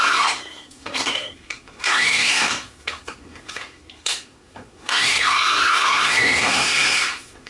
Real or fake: fake